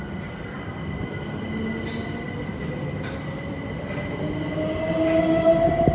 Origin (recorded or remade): recorded